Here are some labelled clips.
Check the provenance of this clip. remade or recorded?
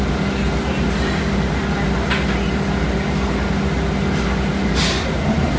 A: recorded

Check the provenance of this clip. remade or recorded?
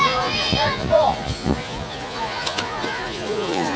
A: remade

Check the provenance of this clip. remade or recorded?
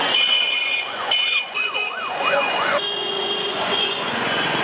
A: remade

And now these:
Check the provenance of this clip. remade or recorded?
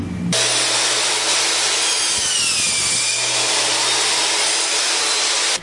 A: recorded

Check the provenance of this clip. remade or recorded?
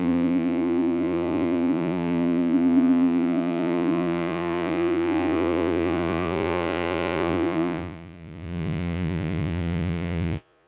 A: remade